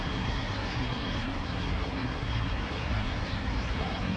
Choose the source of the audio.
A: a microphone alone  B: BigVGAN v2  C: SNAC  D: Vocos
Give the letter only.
C